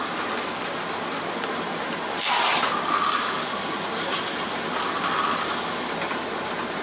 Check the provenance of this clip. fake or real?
real